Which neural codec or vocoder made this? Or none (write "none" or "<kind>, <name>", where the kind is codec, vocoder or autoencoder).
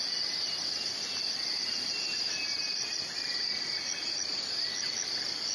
none